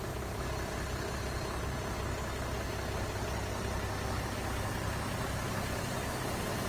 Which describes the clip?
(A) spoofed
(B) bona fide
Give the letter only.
B